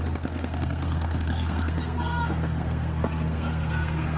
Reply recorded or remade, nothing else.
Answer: remade